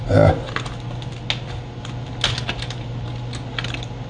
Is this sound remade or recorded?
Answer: recorded